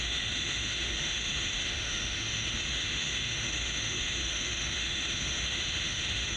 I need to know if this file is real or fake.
fake